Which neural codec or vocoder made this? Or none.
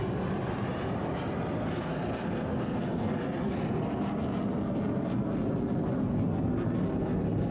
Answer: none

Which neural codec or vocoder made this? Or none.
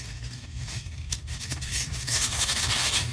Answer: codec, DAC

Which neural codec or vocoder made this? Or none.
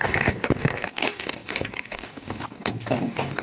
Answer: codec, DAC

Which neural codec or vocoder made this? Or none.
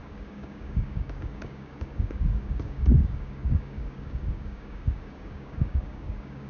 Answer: codec, DAC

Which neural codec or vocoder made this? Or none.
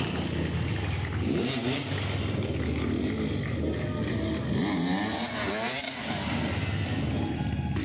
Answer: none